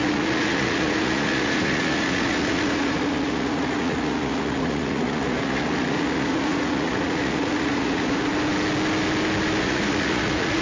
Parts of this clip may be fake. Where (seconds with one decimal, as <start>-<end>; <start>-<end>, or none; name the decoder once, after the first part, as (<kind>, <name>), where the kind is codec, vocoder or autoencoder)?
0.0-8.3 (vocoder, Vocos); 9.6-10.6